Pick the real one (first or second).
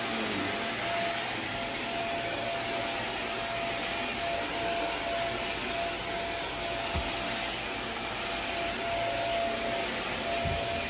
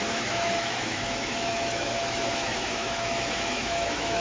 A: first